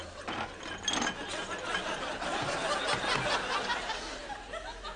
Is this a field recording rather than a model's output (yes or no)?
yes